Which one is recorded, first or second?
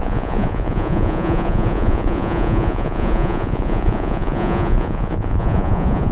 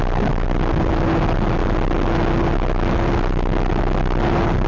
second